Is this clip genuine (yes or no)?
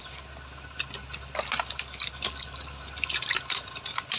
yes